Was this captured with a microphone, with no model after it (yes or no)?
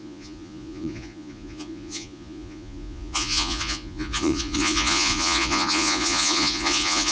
no